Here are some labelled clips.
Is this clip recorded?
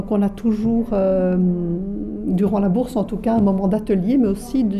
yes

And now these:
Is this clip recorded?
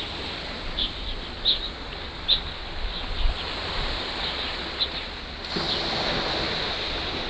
yes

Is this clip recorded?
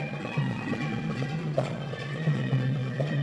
no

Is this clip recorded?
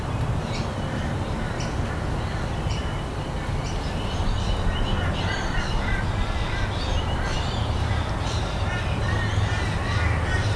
yes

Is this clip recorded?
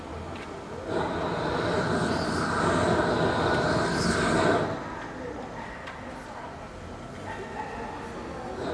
yes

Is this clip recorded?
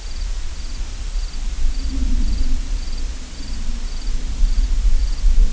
yes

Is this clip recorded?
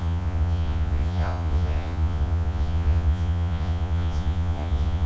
no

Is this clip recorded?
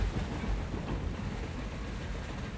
yes